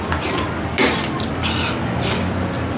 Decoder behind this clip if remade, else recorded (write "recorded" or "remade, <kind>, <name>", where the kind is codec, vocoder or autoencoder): recorded